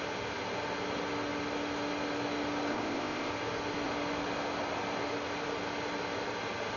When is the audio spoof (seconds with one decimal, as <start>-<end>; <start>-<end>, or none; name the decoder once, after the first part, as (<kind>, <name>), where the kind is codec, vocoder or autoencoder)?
2.7-3.3 (codec, ZipCodec)